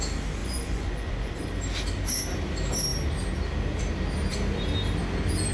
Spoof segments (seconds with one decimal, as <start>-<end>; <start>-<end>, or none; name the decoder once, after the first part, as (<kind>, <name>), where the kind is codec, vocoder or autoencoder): 0.4-1.3 (vocoder, Vocos)